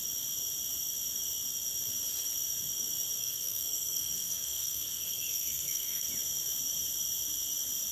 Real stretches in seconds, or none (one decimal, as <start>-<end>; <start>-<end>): 0.0-3.2; 6.1-7.9